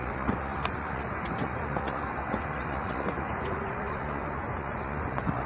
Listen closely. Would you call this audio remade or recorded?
remade